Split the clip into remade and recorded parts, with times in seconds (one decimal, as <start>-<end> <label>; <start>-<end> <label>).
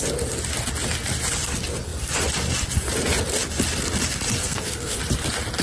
0.0-4.4 recorded; 4.4-5.0 remade; 5.0-5.6 recorded